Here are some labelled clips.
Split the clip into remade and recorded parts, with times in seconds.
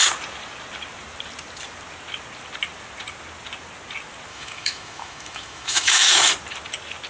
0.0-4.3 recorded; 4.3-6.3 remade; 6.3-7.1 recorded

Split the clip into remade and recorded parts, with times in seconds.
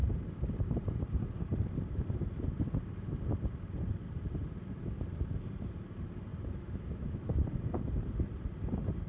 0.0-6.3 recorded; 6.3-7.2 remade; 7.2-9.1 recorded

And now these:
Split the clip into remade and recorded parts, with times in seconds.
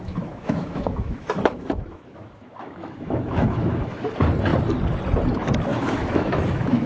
0.0-4.1 remade; 4.1-5.7 recorded; 5.7-6.9 remade